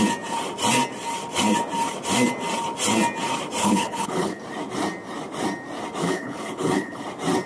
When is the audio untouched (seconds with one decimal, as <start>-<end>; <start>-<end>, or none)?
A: 0.0-3.6; 4.4-6.0; 7.0-7.5

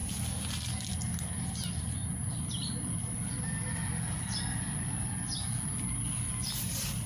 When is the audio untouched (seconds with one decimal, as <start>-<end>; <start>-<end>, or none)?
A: 0.0-7.1

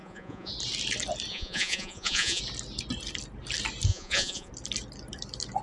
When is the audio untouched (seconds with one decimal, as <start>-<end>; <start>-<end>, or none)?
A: 0.5-1.3; 2.4-3.9; 4.5-5.6

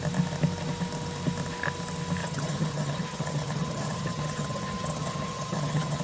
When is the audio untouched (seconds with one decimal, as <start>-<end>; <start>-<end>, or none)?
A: 0.0-2.2

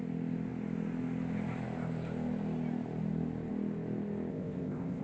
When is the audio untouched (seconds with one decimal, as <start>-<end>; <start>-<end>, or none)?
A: 0.0-4.3

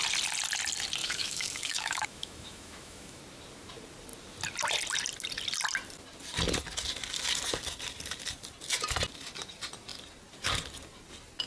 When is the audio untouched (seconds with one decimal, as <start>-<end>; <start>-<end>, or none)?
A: 0.0-1.0; 3.2-11.5